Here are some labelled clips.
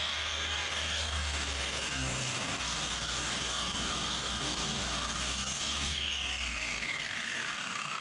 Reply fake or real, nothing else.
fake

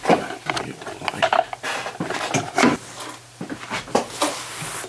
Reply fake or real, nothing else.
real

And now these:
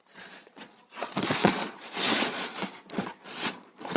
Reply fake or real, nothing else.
fake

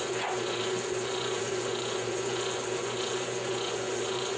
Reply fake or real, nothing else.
fake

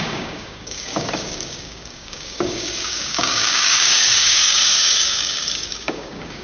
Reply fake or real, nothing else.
fake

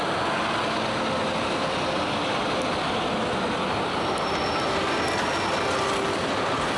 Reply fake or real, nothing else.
real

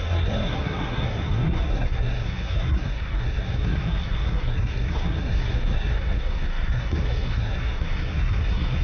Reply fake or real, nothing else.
fake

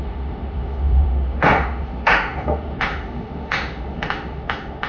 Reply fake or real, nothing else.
fake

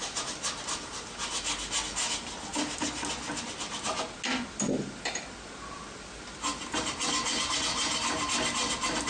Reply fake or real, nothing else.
real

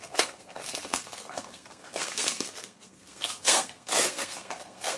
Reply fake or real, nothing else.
fake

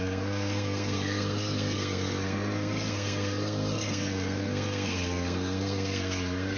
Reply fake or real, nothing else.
fake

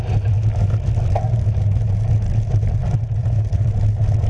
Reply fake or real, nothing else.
real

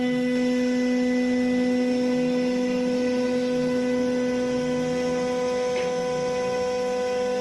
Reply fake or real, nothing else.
real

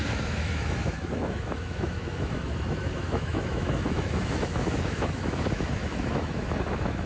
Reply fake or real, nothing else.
fake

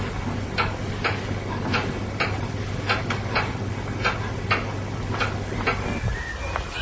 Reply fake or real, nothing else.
real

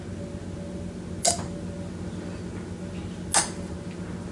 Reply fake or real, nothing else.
real